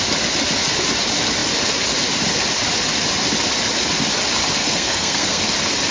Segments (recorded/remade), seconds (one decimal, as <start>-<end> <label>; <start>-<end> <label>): 0.0-4.6 recorded; 4.6-5.4 remade; 5.4-5.9 recorded